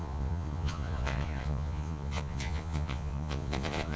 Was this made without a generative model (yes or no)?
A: no